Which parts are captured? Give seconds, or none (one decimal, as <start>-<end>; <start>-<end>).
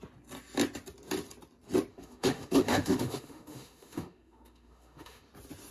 0.0-1.9; 5.3-5.7